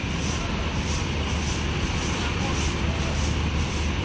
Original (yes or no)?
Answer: yes